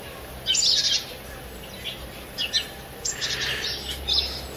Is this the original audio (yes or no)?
yes